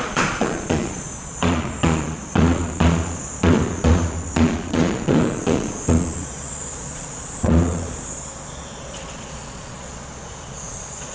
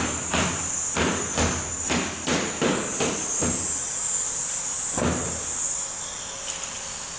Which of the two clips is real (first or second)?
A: second